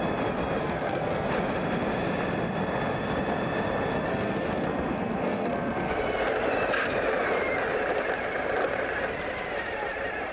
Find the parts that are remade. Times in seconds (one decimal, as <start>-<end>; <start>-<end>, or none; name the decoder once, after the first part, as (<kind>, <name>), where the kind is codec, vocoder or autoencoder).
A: 0.6-1.3 (codec, SNAC); 4.1-5.9